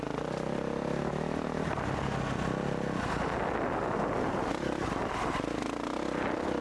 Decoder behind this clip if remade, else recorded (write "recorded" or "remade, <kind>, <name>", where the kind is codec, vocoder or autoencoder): recorded